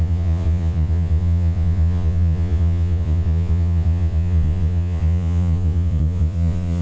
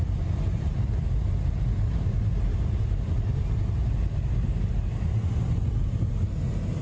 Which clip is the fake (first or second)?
first